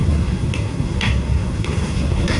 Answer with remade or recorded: remade